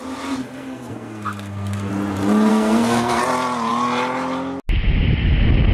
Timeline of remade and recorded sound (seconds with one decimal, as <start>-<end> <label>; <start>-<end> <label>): 0.0-0.4 recorded; 0.4-1.9 remade; 1.9-2.5 recorded; 2.5-3.2 remade; 3.2-5.7 recorded